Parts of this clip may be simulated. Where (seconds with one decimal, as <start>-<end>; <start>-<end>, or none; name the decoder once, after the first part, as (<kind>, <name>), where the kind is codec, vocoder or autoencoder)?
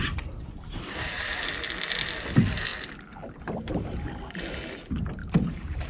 5.2-5.9 (vocoder, BigVGAN v2)